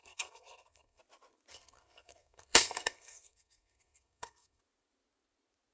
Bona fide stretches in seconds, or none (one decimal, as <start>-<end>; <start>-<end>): 1.0-1.5; 4.6-5.7